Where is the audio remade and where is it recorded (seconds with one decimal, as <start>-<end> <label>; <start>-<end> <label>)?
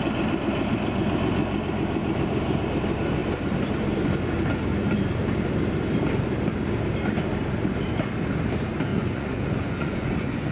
0.0-8.9 recorded; 8.9-10.5 remade